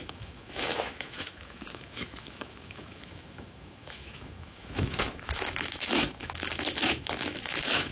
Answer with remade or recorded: remade